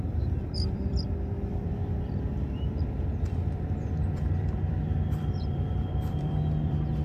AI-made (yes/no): yes